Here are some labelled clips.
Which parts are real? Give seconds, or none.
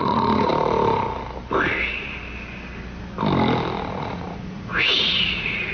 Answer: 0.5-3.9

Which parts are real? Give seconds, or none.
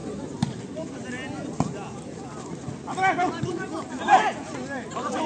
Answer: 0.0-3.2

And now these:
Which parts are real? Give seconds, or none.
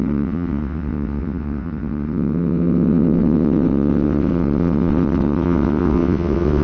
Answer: none